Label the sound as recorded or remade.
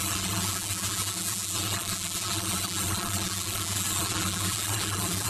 remade